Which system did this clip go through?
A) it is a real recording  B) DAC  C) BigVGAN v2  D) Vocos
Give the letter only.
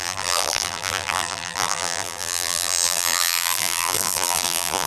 C